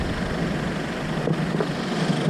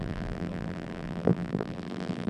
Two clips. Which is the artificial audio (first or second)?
second